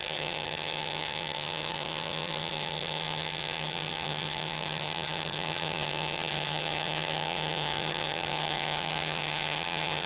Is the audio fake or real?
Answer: fake